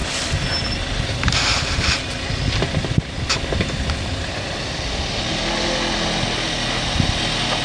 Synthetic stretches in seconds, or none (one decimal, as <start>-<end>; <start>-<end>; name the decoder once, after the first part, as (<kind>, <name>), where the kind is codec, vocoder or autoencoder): none